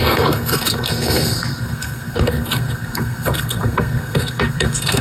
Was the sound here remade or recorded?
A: remade